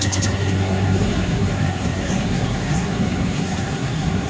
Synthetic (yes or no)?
yes